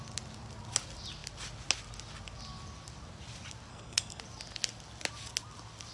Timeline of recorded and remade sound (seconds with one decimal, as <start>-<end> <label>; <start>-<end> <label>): 0.0-3.7 recorded; 3.7-4.2 remade; 4.2-5.9 recorded